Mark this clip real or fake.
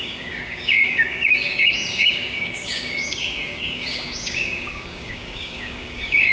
fake